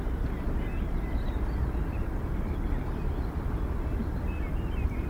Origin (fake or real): real